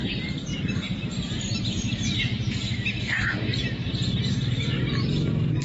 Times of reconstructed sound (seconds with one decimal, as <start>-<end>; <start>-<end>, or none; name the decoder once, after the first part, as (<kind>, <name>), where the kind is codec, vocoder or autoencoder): 0.0-0.5 (vocoder, BigVGAN v2); 1.4-2.1; 4.5-5.6